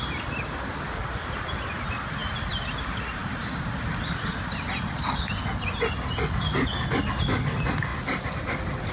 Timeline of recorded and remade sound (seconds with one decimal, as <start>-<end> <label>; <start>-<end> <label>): 0.0-8.9 recorded